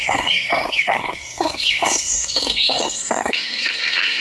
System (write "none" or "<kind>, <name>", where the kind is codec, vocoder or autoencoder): codec, SNAC